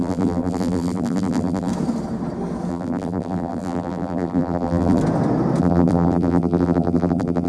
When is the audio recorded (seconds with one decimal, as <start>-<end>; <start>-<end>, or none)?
1.7-2.7; 5.0-5.6